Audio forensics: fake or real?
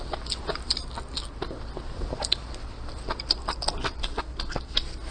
real